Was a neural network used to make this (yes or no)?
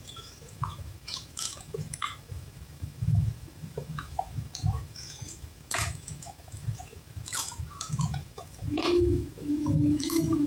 yes